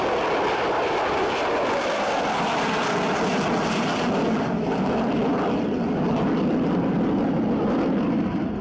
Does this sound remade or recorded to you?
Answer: recorded